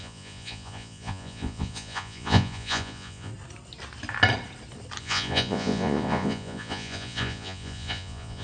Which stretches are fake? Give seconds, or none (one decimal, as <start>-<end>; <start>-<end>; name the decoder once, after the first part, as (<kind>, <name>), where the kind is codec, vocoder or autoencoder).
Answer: 0.0-3.3 (vocoder, Vocos); 5.0-8.4